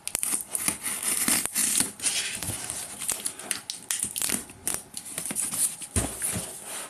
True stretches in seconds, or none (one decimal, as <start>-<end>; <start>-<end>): 0.0-6.9